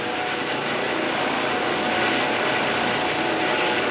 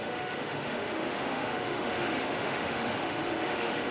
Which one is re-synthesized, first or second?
second